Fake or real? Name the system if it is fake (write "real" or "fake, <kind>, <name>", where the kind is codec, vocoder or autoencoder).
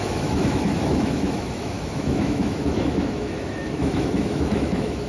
fake, autoencoder, DAC-VAE